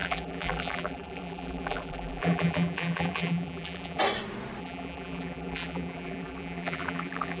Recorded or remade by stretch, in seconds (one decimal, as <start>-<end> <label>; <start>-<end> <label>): 0.0-4.0 remade; 4.0-4.6 recorded; 4.6-7.4 remade